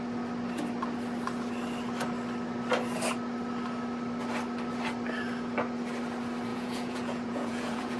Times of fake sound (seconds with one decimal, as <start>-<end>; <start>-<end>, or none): 6.5-8.0